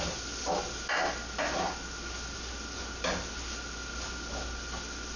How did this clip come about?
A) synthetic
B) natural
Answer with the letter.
B